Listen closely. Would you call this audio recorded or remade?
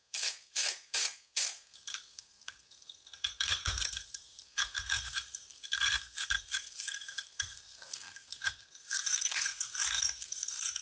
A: remade